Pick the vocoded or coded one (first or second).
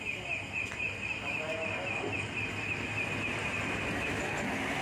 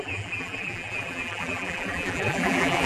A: second